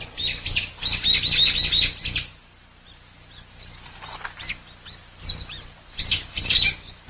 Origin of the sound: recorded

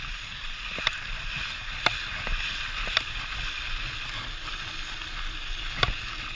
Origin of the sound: recorded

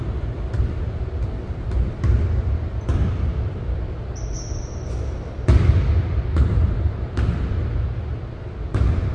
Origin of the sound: recorded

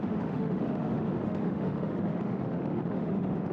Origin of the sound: remade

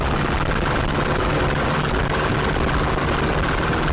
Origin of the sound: recorded